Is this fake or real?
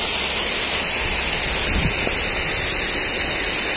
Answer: real